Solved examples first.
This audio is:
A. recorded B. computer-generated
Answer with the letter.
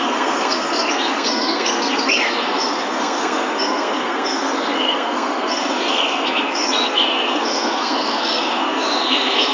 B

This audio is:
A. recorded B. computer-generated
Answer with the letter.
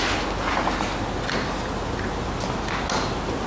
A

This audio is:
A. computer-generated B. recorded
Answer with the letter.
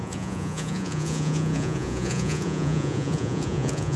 A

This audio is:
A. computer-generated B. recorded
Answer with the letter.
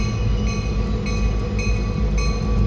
B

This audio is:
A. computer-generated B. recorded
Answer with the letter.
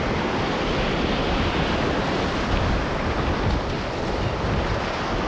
B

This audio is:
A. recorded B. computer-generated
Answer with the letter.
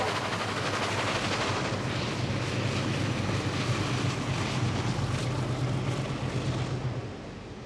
A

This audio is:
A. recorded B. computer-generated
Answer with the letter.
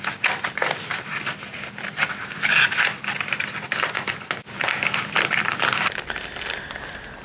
A